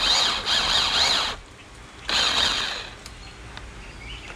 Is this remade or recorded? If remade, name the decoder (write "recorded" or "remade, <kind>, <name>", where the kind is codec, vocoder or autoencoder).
recorded